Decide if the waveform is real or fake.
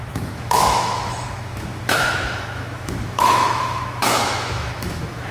fake